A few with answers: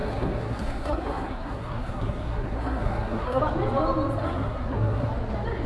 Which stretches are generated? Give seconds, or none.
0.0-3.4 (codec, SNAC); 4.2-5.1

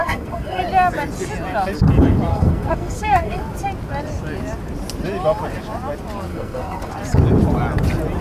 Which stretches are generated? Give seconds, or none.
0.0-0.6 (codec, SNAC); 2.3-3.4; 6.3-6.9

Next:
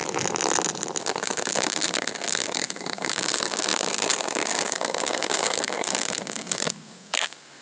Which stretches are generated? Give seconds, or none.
1.0-7.6 (codec, SNAC)

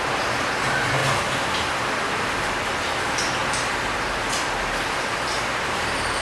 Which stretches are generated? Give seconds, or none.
none

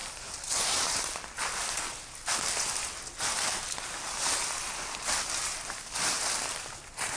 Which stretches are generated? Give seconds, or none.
none

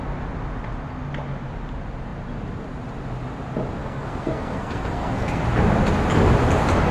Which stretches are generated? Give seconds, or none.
3.8-5.4 (codec, SNAC)